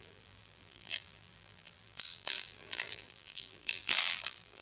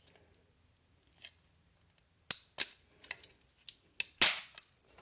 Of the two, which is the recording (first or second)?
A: second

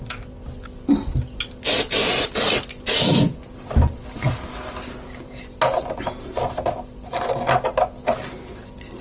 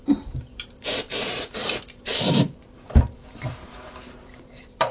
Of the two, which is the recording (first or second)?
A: first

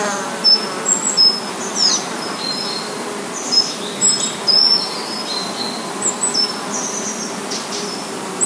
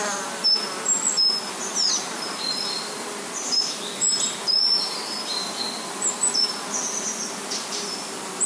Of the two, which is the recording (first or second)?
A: first